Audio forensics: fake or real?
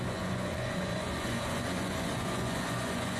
fake